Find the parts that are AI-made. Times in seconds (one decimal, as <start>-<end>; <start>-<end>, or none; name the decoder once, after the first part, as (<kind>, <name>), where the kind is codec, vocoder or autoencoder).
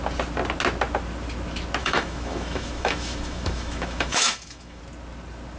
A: 1.8-4.8 (autoencoder, DAC-VAE)